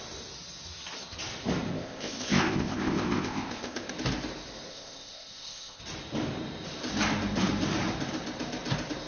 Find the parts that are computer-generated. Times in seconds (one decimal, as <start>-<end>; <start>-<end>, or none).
1.7-3.9; 4.7-5.8